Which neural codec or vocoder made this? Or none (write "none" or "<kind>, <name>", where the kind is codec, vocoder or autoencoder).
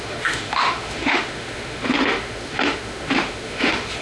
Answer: autoencoder, DAC-VAE